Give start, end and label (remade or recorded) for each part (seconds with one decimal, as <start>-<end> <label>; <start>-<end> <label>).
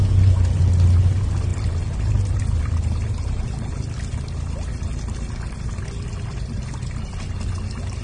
0.0-8.0 recorded